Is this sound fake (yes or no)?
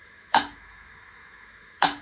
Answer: yes